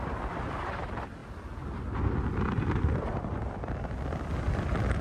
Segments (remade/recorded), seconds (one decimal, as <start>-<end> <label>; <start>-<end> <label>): 0.0-2.5 recorded; 2.5-3.3 remade; 3.3-5.0 recorded